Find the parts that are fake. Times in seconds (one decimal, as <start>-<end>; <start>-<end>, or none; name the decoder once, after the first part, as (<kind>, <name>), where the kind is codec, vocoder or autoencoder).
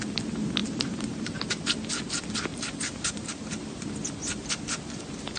0.6-1.6 (vocoder, BigVGAN v2); 2.5-3.4